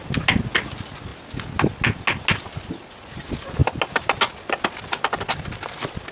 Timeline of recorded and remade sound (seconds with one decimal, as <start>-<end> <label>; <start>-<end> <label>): 0.0-6.1 recorded